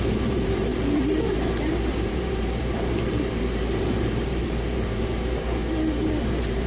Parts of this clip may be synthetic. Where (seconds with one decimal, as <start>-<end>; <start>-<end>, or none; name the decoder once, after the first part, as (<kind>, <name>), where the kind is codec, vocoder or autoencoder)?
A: 0.0-5.6 (vocoder, BigVGAN v2); 6.3-6.7